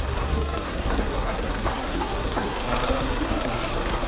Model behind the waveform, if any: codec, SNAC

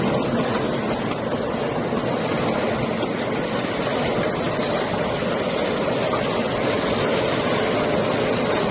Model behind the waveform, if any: none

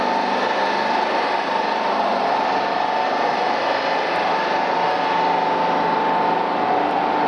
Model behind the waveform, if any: none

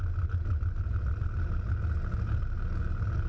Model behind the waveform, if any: none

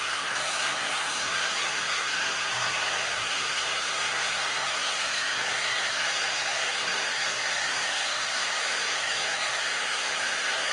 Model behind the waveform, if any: codec, SNAC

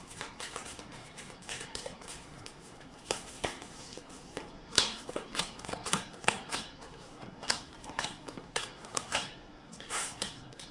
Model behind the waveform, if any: codec, SNAC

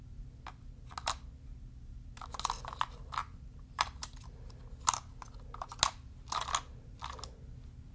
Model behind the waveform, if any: none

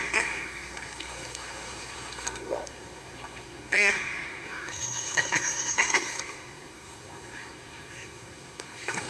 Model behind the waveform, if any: codec, SNAC